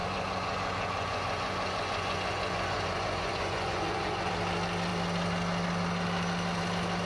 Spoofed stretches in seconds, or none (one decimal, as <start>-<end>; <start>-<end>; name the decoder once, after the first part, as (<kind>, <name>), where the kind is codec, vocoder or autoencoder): 0.0-4.3 (vocoder, Vocos)